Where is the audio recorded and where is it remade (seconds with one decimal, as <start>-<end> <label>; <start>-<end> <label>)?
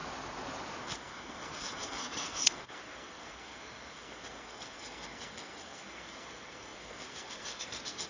0.0-0.8 recorded; 0.8-8.1 remade